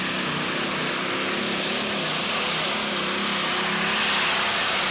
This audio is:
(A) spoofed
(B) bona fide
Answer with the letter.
B